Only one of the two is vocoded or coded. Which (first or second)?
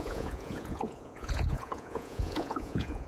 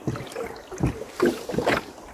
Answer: first